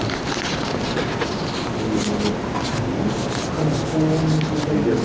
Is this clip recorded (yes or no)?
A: yes